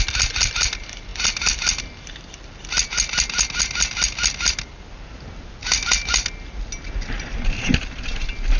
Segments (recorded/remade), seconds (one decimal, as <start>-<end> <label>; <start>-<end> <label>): 0.0-8.6 recorded